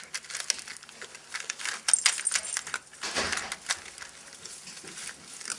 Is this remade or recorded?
recorded